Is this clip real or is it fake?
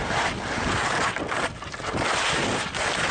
real